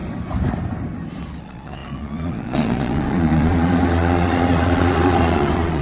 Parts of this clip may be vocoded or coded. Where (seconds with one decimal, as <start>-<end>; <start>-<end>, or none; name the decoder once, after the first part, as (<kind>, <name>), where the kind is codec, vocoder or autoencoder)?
1.4-5.8 (vocoder, Vocos)